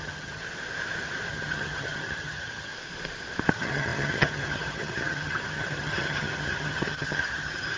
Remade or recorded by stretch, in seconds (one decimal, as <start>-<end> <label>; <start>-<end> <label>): 0.0-0.4 remade; 0.4-1.3 recorded; 1.3-2.7 remade; 2.7-3.5 recorded; 3.5-7.8 remade